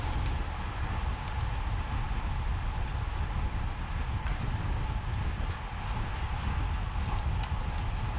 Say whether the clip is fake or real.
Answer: real